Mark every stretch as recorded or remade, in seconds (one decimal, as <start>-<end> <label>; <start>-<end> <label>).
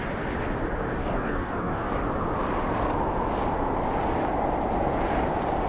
0.0-1.0 recorded; 1.0-1.9 remade; 1.9-5.7 recorded